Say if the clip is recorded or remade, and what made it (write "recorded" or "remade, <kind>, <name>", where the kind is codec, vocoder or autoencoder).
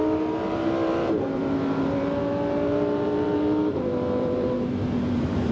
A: remade, vocoder, BigVGAN v2